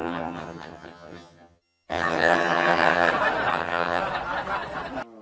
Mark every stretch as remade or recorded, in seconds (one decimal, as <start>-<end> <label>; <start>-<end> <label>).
0.0-3.1 remade; 3.1-3.5 recorded; 3.5-4.0 remade; 4.0-5.2 recorded